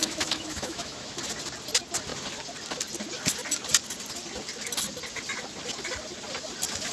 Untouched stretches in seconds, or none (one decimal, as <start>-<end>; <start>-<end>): 1.2-6.9